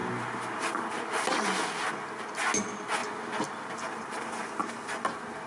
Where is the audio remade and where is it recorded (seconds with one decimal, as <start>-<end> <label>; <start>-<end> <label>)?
0.0-5.5 recorded